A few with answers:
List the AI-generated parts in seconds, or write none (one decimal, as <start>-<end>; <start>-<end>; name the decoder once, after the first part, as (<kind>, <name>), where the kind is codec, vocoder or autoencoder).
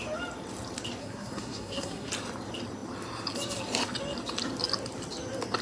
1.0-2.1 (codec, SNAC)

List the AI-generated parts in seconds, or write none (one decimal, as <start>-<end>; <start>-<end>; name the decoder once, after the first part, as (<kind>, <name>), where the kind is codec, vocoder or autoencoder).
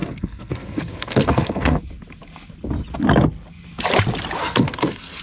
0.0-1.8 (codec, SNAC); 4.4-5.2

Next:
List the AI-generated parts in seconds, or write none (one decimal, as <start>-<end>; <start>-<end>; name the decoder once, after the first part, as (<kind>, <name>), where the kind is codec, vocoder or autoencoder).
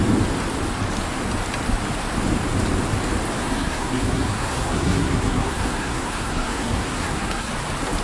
3.4-7.5 (codec, SNAC)